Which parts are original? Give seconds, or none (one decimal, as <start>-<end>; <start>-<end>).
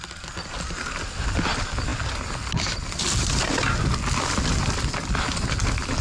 0.0-6.0